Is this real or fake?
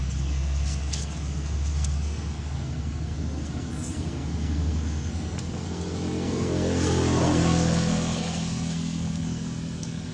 fake